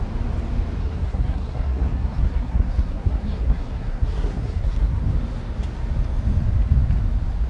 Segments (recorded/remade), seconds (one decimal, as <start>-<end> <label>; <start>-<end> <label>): 0.0-0.8 recorded; 0.8-5.0 remade; 5.0-7.5 recorded